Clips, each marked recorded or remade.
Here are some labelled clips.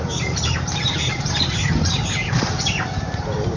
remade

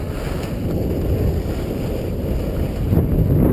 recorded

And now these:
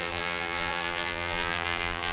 remade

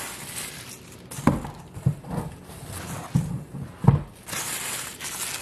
recorded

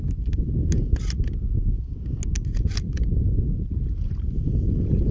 recorded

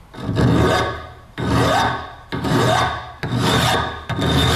recorded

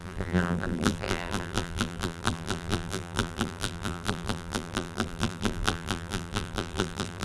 remade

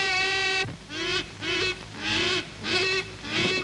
remade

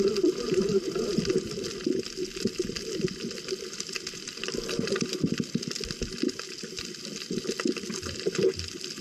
recorded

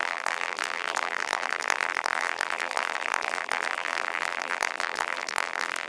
remade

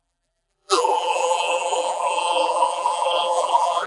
remade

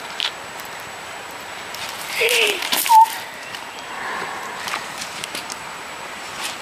remade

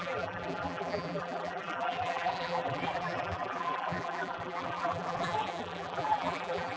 remade